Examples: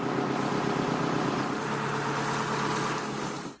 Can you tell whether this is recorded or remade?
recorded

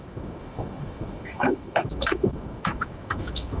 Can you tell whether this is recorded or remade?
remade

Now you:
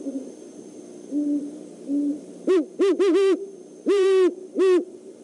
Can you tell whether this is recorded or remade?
remade